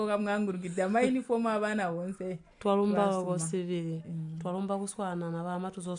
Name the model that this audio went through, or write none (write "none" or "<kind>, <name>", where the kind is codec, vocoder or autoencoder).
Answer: none